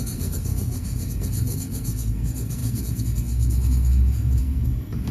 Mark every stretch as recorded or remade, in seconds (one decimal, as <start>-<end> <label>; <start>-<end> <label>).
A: 0.0-5.1 remade

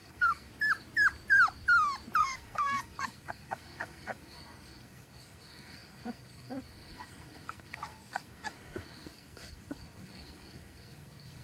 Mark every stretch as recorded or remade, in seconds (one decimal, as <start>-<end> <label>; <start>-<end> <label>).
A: 0.0-0.5 remade; 0.5-2.2 recorded; 2.2-11.4 remade

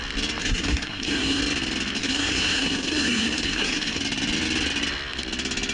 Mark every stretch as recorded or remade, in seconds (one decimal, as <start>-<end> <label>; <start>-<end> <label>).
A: 0.0-0.4 recorded; 0.4-1.4 remade; 1.4-2.0 recorded; 2.0-4.0 remade; 4.0-5.7 recorded

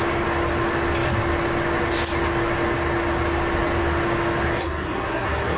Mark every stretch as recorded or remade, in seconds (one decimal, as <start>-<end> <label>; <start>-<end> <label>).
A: 0.0-4.5 recorded; 4.5-5.6 remade

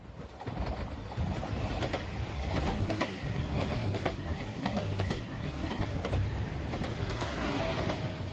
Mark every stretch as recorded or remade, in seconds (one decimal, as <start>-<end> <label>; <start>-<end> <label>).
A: 0.0-2.3 recorded; 2.3-6.1 remade; 6.1-6.9 recorded; 6.9-7.6 remade; 7.6-8.3 recorded

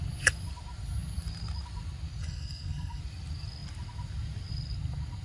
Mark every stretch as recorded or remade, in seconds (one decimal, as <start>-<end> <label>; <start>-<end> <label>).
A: 0.0-2.2 recorded; 2.2-3.0 remade; 3.0-5.2 recorded